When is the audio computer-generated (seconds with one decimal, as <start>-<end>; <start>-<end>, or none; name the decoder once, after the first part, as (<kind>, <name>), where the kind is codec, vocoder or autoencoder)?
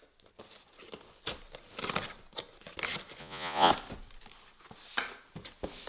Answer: 3.2-3.7 (vocoder, Vocos)